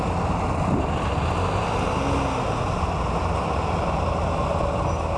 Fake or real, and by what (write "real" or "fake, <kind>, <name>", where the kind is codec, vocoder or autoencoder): real